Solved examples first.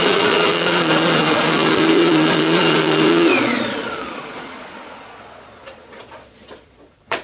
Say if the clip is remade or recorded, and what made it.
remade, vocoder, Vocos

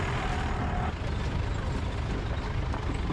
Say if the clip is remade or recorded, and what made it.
recorded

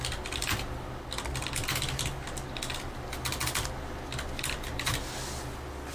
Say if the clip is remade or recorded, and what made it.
recorded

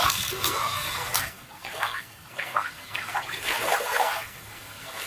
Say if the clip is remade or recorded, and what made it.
remade, codec, SNAC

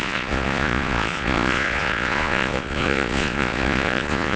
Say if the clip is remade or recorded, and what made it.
remade, vocoder, Vocos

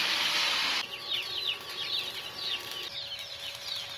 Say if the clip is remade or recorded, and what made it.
recorded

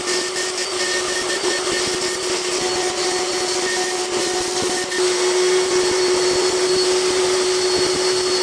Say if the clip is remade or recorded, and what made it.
recorded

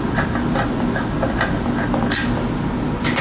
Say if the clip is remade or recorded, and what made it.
recorded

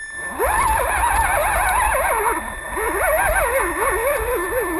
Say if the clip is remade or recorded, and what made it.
recorded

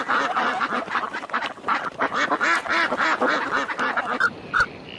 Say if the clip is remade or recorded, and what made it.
recorded